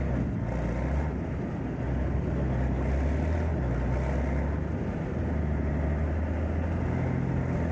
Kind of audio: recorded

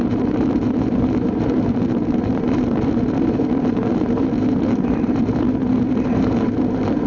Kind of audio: remade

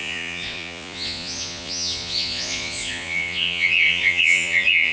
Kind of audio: remade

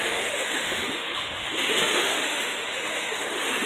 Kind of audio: remade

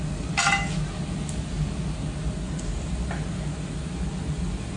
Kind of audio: recorded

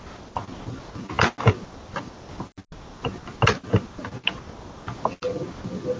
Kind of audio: recorded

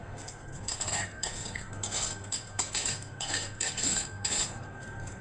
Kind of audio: remade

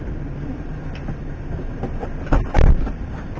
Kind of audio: recorded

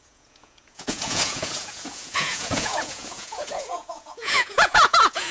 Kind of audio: remade